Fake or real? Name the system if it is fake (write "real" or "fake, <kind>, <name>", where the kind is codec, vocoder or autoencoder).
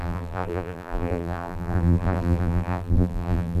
fake, vocoder, BigVGAN v2